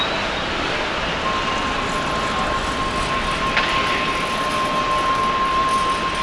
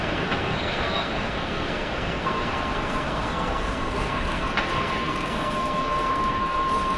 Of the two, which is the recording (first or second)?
first